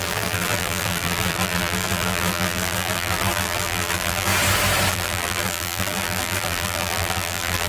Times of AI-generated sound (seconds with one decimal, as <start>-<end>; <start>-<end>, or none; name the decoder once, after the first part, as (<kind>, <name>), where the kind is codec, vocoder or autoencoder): 0.0-4.3 (vocoder, BigVGAN v2); 4.9-7.7